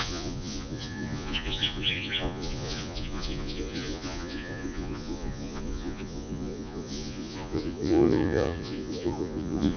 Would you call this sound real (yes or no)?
no